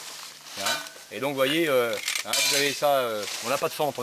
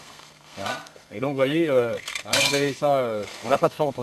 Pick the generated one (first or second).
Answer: second